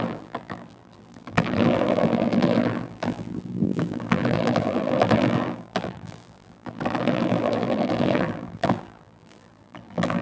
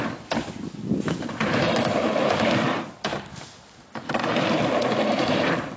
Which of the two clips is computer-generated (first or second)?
first